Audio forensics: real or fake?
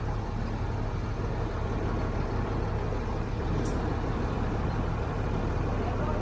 real